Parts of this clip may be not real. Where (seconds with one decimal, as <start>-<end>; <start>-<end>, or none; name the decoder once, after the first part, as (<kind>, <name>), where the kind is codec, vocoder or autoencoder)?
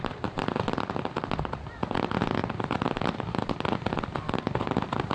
none